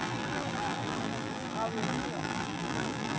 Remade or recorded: remade